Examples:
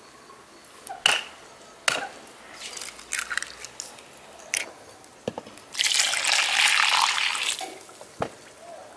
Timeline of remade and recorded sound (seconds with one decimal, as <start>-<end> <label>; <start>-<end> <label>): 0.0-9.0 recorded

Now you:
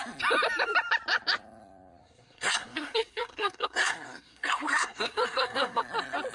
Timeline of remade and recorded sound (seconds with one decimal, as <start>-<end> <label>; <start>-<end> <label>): 0.0-2.0 recorded; 2.0-5.8 remade; 5.8-6.3 recorded

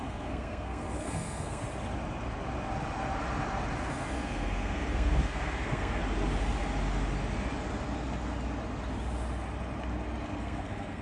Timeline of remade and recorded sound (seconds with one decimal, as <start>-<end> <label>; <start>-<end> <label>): 0.0-1.6 remade; 1.6-3.9 recorded; 3.9-6.0 remade; 6.0-10.4 recorded; 10.4-11.0 remade